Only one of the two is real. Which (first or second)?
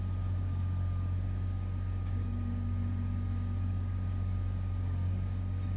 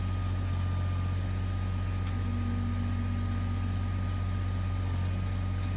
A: second